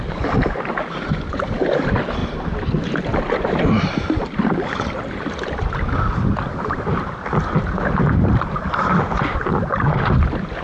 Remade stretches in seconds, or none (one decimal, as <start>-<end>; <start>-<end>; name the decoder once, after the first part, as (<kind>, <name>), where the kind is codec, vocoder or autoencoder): 0.0-2.2 (vocoder, BigVGAN v2); 3.0-10.6